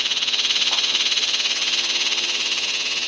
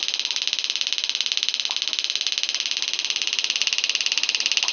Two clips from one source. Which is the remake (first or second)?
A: first